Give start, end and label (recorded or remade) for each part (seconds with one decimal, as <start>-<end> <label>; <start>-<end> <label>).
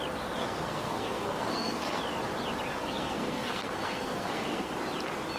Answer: 0.0-0.4 recorded; 0.4-2.0 remade; 2.0-2.8 recorded; 2.8-4.7 remade; 4.7-5.4 recorded